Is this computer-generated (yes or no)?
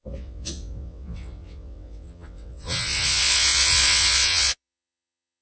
yes